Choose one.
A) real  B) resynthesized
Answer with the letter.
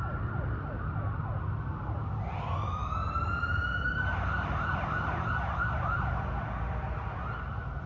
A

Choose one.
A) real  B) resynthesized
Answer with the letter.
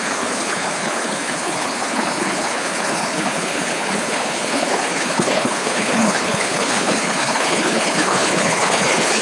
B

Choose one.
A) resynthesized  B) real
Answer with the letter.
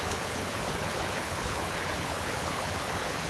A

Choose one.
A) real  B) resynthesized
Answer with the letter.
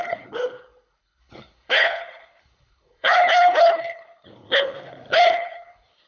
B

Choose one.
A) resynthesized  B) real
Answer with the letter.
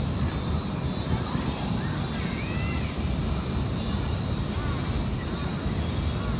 B